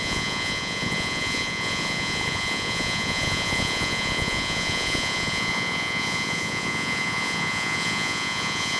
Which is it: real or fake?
fake